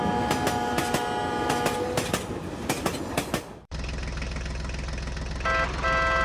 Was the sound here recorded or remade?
recorded